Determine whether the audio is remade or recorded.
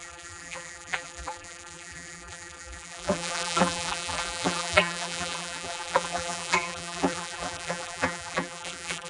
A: remade